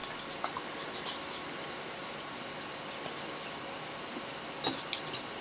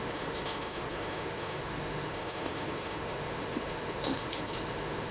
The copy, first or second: second